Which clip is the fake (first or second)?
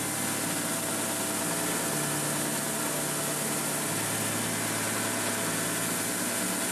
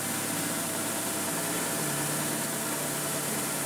second